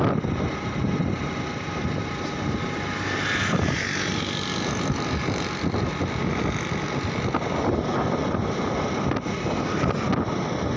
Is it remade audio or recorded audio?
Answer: recorded